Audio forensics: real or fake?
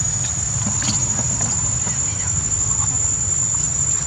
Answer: real